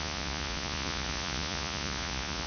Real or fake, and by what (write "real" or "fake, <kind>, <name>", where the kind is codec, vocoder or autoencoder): fake, vocoder, Vocos